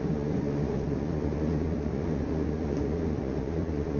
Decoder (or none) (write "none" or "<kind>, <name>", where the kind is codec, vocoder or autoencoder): vocoder, Vocos